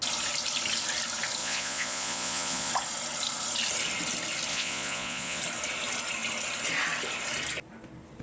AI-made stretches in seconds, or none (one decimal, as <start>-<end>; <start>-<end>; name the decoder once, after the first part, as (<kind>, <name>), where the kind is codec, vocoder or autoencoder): 1.4-2.7 (vocoder, Vocos); 4.5-5.4